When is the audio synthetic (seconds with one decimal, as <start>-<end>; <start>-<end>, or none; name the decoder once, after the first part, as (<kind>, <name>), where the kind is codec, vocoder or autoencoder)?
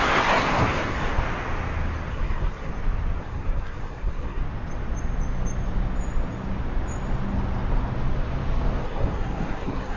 0.0-1.2 (codec, SNAC); 2.1-2.7; 3.2-4.4; 8.8-10.0